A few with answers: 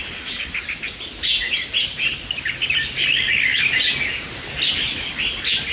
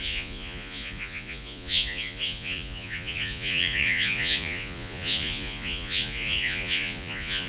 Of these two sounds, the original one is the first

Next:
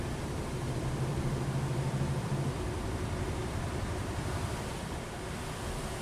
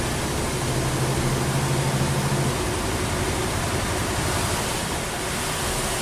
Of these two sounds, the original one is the second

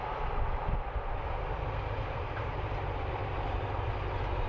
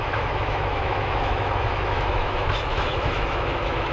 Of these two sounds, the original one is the first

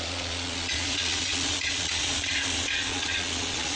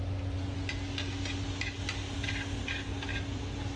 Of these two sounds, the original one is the second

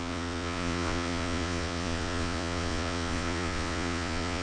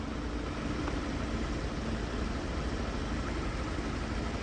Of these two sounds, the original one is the second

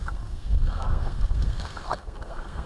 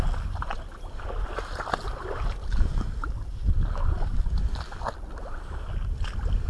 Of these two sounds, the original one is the second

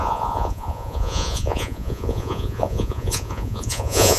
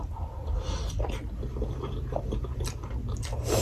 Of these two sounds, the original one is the second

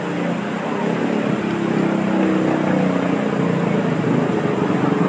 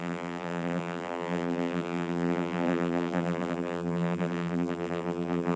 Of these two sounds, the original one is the first